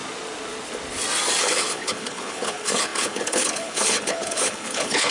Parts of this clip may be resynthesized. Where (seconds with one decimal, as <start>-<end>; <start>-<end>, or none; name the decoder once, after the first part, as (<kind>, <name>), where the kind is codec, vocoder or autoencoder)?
1.4-5.1 (codec, HILCodec)

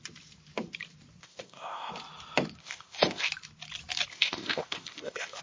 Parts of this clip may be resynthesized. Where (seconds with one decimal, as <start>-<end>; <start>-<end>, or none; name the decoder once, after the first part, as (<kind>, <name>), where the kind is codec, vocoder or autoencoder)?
1.2-1.9 (codec, ZipCodec); 2.6-3.3; 4.1-5.4

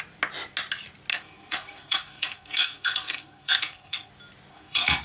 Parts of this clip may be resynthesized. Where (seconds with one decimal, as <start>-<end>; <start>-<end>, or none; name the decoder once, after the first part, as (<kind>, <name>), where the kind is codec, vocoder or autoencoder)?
1.1-4.1 (codec, SNAC); 4.5-5.0

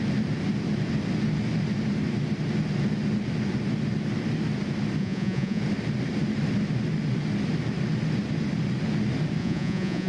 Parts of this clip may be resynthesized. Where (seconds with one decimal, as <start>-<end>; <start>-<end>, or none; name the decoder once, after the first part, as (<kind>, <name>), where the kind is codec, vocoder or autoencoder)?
5.0-5.6 (vocoder, Vocos); 9.4-10.1

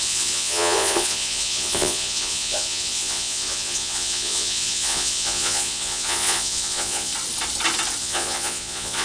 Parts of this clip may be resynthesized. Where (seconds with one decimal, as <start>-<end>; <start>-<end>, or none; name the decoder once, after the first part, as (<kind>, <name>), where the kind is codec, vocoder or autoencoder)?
0.0-7.1 (vocoder, Vocos); 8.0-9.0

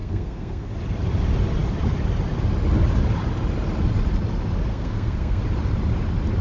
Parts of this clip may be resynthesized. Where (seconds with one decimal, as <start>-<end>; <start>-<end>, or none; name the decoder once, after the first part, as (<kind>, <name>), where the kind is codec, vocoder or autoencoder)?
0.0-0.7 (codec, SNAC); 4.7-5.4

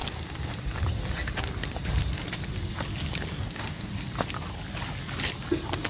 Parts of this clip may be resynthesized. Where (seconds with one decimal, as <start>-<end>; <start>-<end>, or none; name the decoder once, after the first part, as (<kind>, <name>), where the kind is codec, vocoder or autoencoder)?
3.3-3.9 (codec, DAC)